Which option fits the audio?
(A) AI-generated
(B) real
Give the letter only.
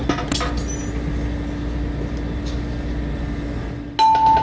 B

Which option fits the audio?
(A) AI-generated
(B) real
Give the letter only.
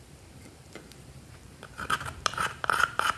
A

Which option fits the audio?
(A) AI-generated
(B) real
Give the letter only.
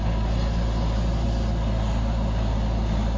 B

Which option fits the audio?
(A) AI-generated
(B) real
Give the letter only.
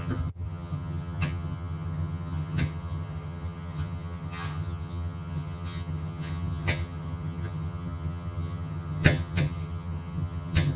A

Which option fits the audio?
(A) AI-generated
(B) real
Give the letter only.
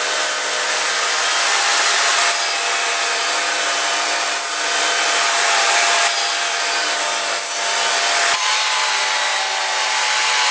A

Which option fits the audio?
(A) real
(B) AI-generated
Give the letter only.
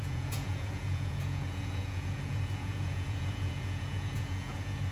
B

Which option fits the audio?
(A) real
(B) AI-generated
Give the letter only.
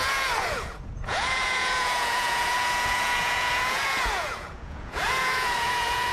B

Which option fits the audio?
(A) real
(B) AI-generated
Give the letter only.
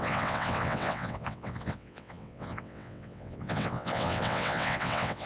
B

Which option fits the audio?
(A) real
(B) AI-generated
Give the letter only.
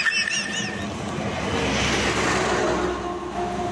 A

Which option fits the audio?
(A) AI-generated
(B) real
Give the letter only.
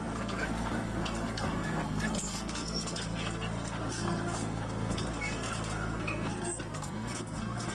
A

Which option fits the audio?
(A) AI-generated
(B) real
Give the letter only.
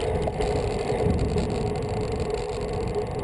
B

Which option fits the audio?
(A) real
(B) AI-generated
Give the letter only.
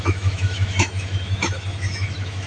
B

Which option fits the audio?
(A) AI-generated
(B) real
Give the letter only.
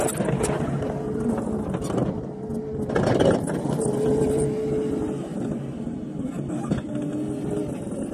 B